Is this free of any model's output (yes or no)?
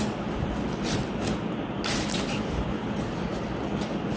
yes